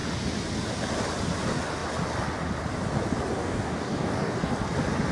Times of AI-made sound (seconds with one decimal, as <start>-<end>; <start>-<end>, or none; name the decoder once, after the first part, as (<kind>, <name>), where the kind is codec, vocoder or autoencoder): 3.4-4.5 (codec, DAC)